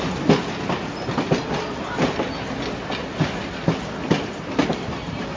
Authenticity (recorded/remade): recorded